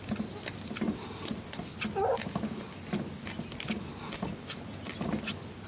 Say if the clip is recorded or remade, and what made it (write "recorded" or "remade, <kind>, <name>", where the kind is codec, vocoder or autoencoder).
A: recorded